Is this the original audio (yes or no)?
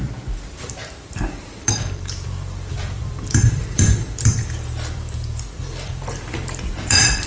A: no